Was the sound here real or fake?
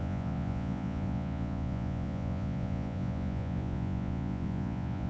fake